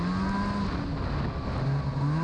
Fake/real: real